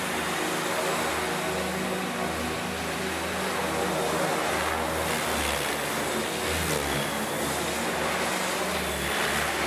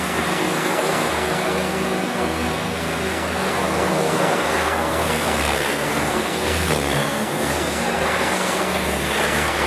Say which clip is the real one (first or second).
first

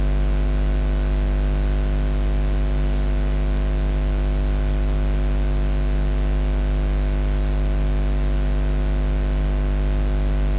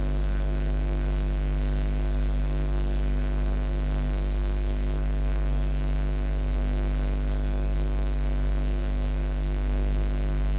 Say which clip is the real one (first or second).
first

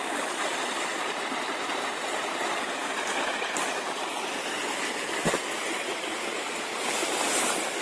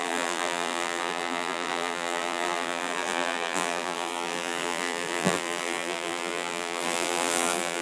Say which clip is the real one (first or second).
first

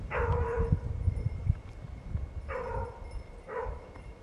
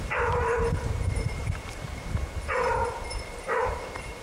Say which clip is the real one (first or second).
first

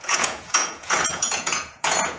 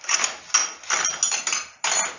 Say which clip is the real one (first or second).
second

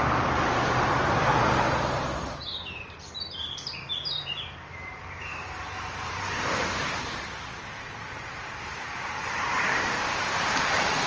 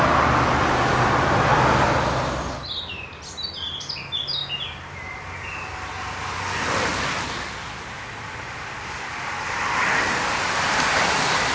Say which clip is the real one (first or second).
second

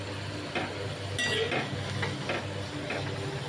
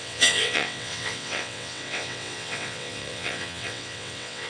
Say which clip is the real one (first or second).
first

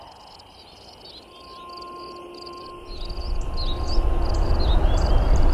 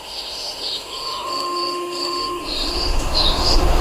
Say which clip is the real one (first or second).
first